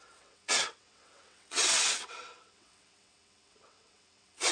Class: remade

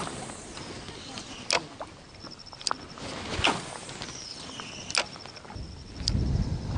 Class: recorded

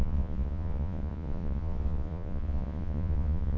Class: remade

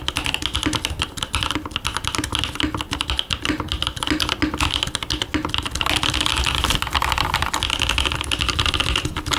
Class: recorded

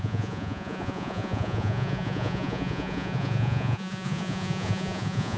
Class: remade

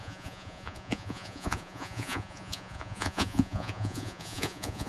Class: remade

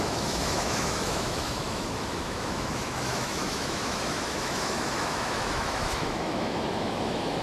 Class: remade